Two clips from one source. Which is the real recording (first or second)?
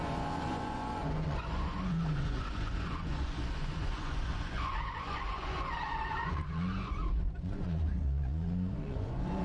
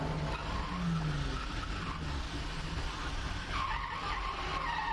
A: second